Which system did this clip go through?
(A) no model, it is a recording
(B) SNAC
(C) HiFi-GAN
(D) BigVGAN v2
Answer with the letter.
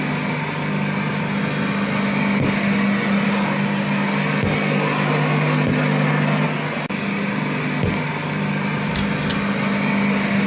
A